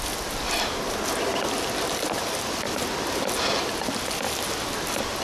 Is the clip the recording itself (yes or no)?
yes